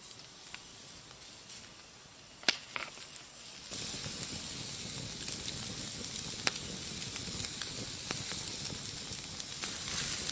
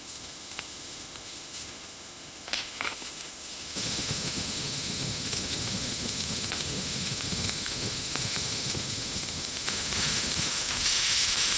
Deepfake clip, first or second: second